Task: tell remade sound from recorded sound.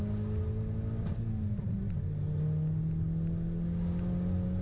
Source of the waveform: recorded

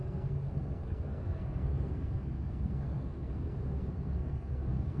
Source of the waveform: remade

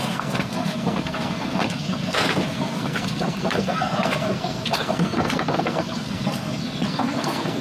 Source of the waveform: remade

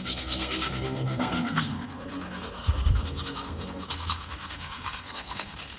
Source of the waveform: remade